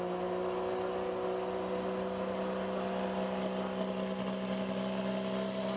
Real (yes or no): yes